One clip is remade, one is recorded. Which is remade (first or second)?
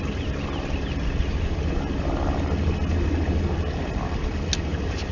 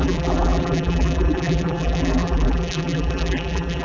second